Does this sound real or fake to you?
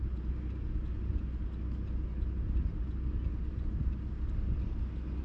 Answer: real